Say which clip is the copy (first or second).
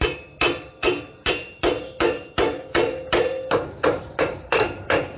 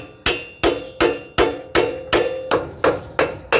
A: first